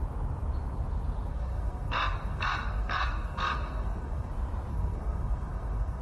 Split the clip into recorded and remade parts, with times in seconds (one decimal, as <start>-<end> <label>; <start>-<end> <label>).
0.0-1.3 recorded; 1.3-4.3 remade; 4.3-4.7 recorded; 4.7-6.0 remade